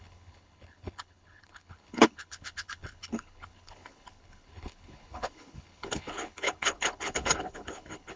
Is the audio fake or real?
fake